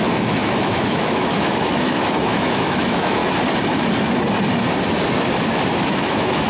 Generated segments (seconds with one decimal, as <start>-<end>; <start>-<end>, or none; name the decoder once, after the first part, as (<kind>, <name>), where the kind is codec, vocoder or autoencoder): 0.0-3.2 (autoencoder, DAC-VAE); 5.8-6.5